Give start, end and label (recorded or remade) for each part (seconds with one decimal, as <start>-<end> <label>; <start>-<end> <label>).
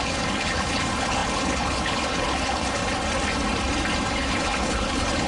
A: 0.0-2.8 remade; 2.8-4.1 recorded; 4.1-5.3 remade